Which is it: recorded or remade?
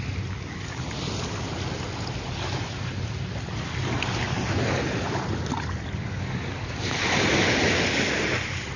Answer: recorded